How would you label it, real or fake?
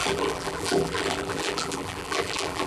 fake